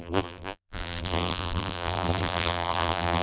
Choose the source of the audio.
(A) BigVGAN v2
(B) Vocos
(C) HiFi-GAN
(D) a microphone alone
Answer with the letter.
A